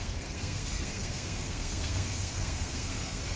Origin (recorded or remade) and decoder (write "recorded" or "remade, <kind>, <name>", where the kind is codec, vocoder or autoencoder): remade, codec, SNAC